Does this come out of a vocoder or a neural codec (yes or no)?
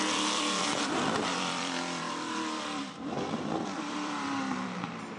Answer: yes